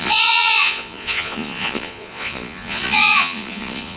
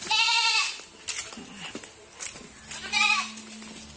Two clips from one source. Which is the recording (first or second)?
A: second